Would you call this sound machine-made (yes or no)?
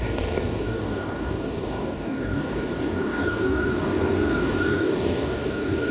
yes